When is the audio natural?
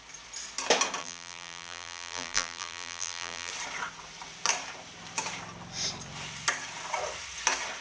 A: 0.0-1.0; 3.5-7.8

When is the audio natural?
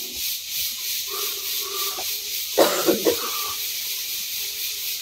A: none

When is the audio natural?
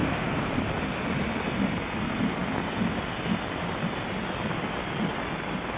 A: 0.7-5.8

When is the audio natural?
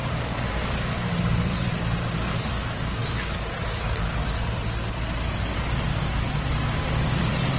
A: 2.5-3.0; 5.1-7.6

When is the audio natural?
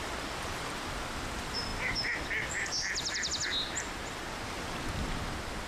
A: 3.4-4.3